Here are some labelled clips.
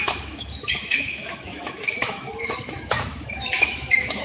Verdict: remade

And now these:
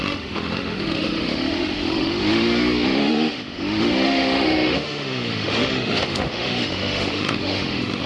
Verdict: remade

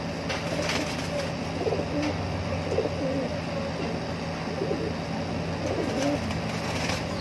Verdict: recorded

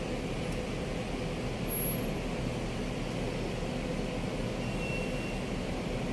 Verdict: recorded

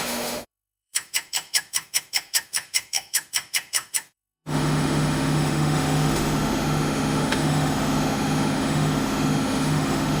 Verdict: remade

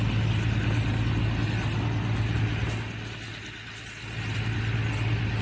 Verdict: recorded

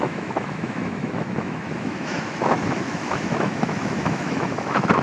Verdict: remade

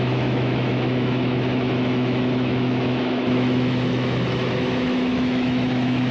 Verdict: remade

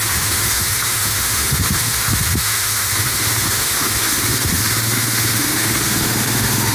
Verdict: remade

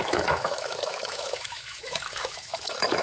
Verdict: remade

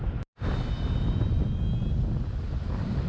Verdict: recorded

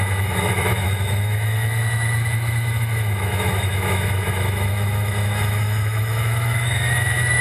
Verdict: remade